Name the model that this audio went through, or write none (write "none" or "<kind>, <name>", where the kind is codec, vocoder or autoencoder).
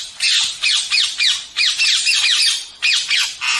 none